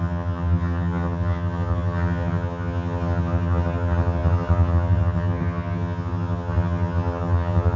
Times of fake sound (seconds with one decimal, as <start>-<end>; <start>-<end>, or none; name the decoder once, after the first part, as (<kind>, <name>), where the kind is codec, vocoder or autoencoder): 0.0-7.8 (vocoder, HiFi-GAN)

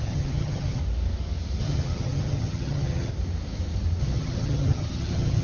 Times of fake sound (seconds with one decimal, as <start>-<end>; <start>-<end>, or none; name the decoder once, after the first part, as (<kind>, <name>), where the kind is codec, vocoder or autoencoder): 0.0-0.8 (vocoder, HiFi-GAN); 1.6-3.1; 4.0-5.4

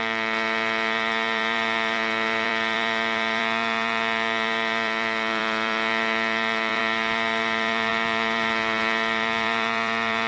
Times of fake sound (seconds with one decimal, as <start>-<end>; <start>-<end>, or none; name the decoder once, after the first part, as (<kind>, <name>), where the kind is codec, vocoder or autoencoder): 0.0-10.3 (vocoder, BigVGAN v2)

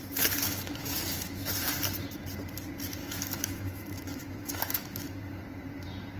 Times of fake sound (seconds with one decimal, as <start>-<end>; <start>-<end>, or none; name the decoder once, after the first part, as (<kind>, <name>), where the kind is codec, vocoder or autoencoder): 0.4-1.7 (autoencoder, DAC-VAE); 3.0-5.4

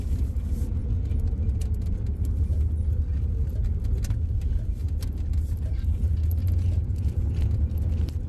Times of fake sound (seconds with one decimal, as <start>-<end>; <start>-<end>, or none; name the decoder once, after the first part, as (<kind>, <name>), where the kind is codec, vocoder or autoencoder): 4.8-5.8 (vocoder, BigVGAN v2); 6.4-7.2

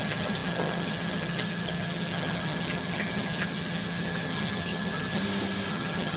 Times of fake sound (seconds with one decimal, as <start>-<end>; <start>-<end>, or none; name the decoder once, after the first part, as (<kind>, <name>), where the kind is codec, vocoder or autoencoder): 0.0-5.2 (vocoder, HiFi-GAN); 5.7-6.2